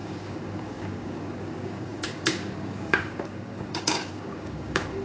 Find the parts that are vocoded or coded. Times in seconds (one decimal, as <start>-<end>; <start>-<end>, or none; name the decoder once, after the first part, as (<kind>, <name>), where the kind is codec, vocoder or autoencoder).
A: 0.0-5.0 (codec, DAC)